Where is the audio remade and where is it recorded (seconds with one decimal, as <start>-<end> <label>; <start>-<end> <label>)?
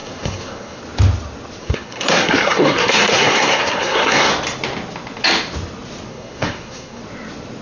0.0-0.8 remade; 0.8-1.6 recorded; 1.6-4.3 remade; 4.3-6.1 recorded; 6.1-7.0 remade; 7.0-7.6 recorded